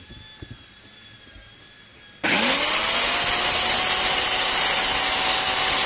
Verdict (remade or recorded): recorded